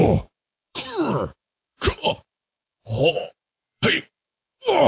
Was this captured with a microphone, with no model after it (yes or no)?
no